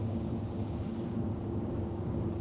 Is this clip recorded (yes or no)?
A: no